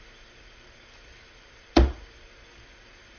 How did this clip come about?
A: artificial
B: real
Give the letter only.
A